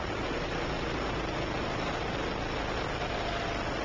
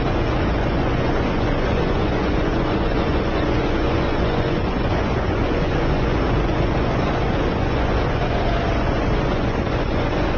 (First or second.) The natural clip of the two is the first